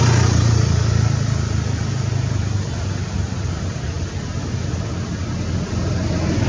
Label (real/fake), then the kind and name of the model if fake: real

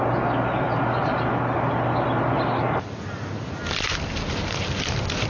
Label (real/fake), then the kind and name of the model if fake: real